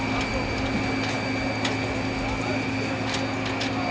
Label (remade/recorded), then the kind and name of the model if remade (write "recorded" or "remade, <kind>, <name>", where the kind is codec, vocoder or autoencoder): recorded